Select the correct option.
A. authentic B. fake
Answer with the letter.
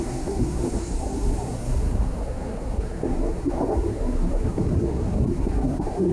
B